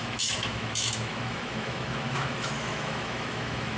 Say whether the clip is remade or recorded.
remade